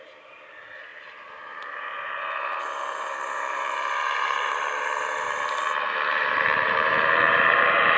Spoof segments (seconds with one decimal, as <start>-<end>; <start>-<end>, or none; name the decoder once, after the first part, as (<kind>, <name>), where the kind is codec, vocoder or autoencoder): 0.0-8.0 (vocoder, BigVGAN v2)